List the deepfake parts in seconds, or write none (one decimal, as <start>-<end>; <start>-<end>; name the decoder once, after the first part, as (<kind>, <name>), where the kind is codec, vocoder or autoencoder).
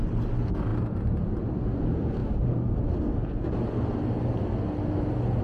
none